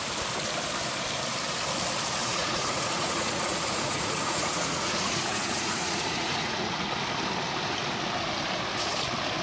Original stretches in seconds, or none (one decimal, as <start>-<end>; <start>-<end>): 0.0-2.2; 6.9-9.4